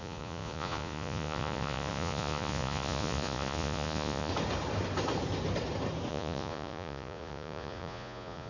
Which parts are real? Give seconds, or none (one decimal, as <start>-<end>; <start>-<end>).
4.3-6.1